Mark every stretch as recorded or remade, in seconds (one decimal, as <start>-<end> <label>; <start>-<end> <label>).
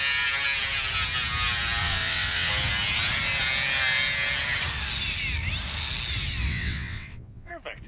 0.0-1.8 recorded; 1.8-2.5 remade; 2.5-6.5 recorded; 6.5-7.5 remade; 7.5-7.9 recorded